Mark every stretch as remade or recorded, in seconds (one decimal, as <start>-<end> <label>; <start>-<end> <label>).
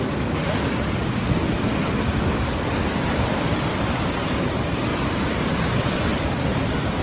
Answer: 0.0-3.7 recorded; 3.7-4.5 remade; 4.5-4.9 recorded; 4.9-7.0 remade